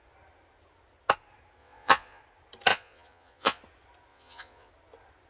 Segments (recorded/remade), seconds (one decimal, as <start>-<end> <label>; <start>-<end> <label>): 0.0-1.6 recorded; 1.6-2.2 remade; 2.2-2.7 recorded; 2.7-3.6 remade; 3.6-4.1 recorded; 4.1-4.7 remade; 4.7-5.3 recorded

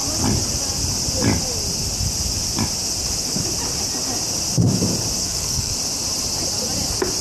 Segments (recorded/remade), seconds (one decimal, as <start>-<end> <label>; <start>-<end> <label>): 0.0-5.2 recorded; 5.2-5.7 remade; 5.7-7.2 recorded

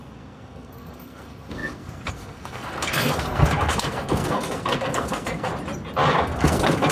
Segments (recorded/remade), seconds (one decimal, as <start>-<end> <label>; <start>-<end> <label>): 0.0-5.5 remade; 5.5-6.1 recorded; 6.1-6.9 remade

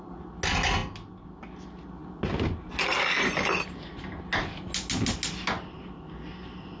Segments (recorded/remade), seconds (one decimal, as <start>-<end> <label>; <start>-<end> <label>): 0.0-6.8 recorded

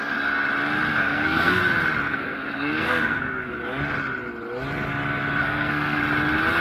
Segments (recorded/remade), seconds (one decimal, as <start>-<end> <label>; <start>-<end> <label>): 0.0-0.9 recorded; 0.9-1.6 remade; 1.6-2.1 recorded; 2.1-3.5 remade; 3.5-5.4 recorded; 5.4-6.0 remade; 6.0-6.6 recorded

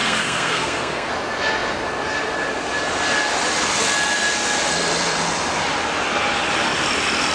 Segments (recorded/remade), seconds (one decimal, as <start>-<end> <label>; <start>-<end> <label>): 0.0-1.1 remade; 1.1-7.3 recorded